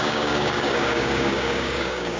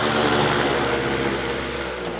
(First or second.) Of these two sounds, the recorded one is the second